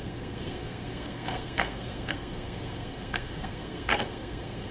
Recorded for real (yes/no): no